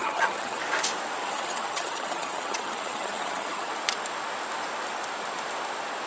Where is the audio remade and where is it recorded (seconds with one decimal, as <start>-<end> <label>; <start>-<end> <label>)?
0.0-0.6 remade; 0.6-1.2 recorded; 1.2-3.7 remade; 3.7-6.1 recorded